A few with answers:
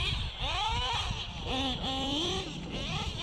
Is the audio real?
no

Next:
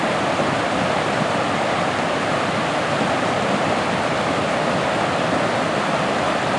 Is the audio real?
yes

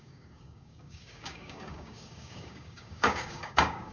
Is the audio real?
no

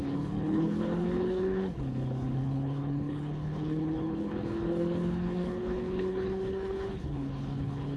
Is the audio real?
no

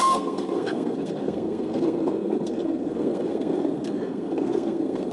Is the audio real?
no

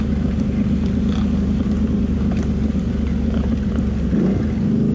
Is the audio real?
yes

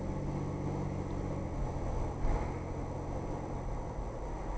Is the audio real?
yes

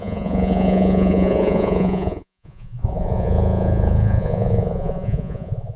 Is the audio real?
no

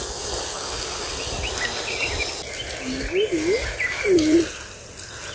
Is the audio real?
yes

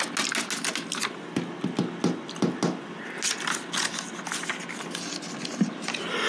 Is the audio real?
yes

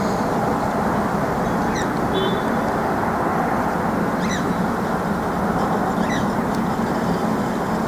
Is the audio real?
yes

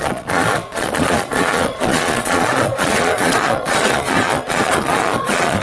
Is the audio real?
no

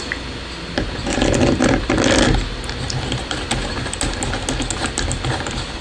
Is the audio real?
yes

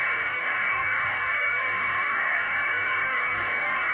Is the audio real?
no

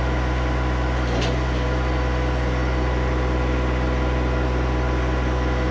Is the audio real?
yes